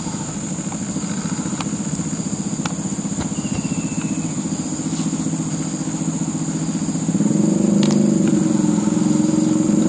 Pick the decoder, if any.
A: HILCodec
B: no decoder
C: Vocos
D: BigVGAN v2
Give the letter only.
B